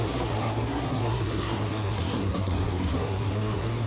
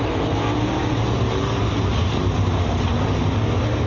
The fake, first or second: first